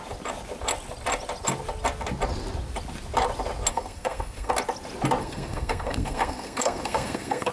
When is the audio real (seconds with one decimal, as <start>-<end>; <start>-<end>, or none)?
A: 0.0-3.7; 4.5-5.2